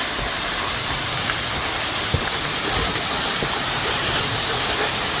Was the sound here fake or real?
real